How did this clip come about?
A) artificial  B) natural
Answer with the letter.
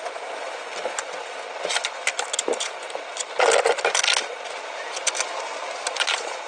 B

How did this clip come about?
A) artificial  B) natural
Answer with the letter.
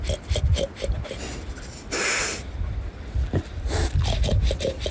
B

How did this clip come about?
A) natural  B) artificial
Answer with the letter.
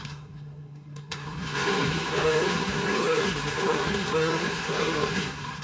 B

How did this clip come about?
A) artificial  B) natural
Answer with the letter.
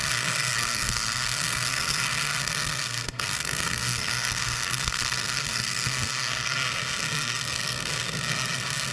A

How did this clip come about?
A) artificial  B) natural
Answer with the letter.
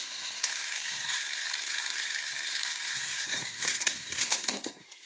A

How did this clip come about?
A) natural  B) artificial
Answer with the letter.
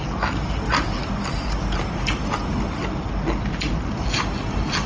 A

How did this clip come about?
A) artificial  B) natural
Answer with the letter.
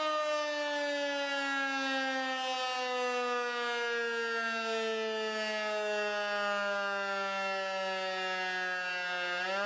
B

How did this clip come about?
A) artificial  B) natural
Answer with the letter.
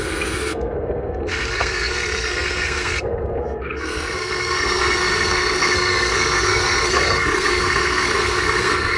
A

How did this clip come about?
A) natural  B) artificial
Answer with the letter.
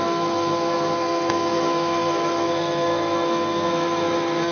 B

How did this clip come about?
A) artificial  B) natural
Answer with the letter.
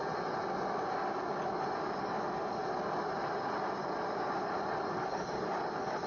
B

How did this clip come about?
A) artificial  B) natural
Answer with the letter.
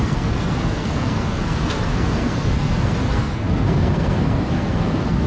A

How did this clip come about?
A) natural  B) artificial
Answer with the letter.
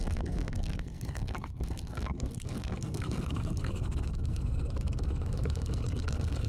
B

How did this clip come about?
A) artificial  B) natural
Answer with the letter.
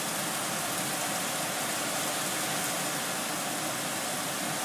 B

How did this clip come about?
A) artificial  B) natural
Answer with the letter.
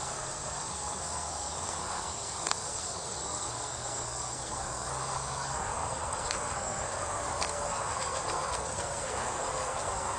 A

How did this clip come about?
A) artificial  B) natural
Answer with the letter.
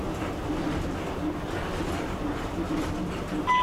B